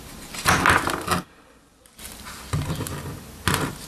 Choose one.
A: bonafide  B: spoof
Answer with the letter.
A